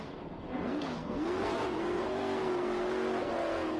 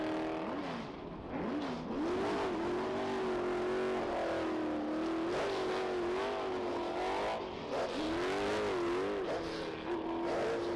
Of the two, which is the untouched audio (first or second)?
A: second